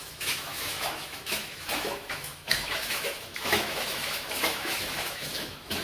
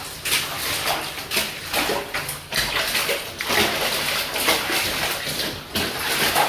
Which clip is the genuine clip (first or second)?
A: second